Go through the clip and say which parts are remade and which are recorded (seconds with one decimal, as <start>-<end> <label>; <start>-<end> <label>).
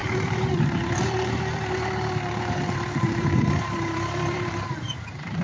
0.0-5.4 remade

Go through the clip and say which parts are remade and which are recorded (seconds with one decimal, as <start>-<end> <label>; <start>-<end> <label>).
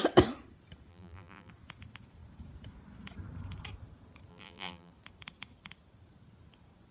0.0-0.9 recorded; 0.9-1.5 remade; 1.5-4.3 recorded; 4.3-4.9 remade; 4.9-6.9 recorded